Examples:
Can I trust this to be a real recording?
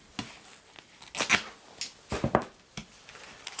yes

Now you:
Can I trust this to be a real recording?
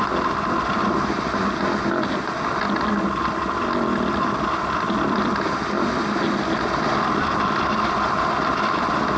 yes